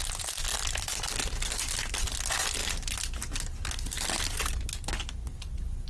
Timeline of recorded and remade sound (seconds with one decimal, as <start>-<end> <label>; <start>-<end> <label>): 0.0-5.9 recorded